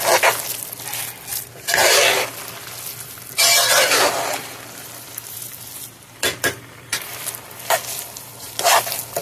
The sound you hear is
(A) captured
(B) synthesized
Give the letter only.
A